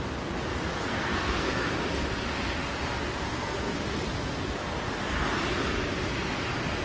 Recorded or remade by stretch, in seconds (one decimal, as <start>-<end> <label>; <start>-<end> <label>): 0.0-0.8 recorded; 0.8-1.7 remade; 1.7-6.8 recorded